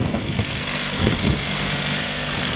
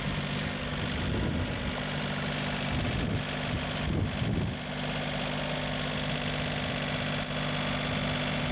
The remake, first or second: first